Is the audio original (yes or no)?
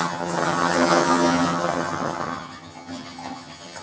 no